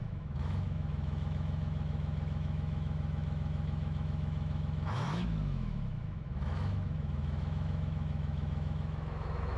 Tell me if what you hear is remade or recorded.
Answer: remade